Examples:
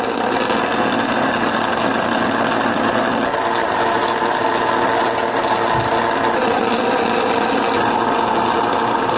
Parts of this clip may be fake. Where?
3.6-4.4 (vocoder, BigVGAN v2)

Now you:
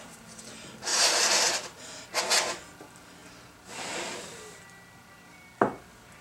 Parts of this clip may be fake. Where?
0.9-1.5 (vocoder, BigVGAN v2)